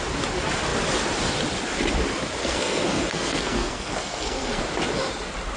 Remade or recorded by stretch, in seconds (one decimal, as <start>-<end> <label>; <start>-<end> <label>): 0.0-2.4 recorded; 2.4-4.6 remade; 4.6-5.6 recorded

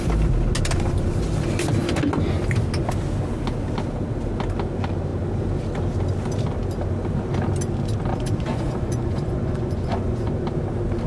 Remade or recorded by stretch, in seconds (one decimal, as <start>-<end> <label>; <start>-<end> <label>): 0.0-8.1 recorded; 8.1-10.3 remade; 10.3-11.1 recorded

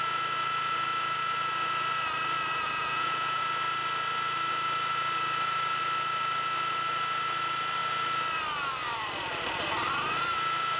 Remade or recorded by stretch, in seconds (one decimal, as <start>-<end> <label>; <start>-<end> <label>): 0.0-2.5 recorded; 2.5-3.4 remade; 3.4-10.8 recorded

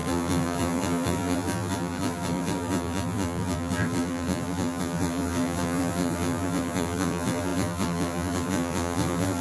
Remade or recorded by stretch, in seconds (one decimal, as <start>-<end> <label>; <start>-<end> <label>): 0.0-9.4 remade

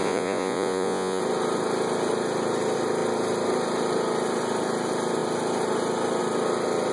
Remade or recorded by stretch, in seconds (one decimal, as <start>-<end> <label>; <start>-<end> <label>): 0.0-1.2 remade; 1.2-6.9 recorded